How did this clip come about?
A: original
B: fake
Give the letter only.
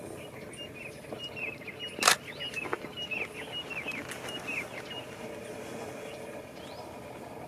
A